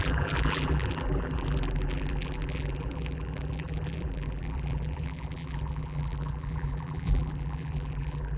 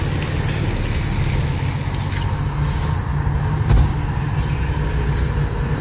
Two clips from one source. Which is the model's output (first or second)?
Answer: first